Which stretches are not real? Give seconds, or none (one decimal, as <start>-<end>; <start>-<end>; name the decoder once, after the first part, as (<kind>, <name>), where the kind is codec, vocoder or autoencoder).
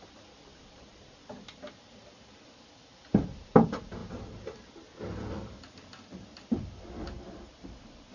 none